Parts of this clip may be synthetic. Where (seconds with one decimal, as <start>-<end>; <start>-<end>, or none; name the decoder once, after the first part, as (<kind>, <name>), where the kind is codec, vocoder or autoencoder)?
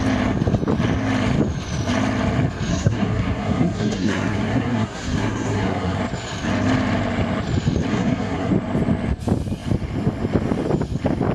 2.7-6.0 (codec, SNAC); 7.9-8.5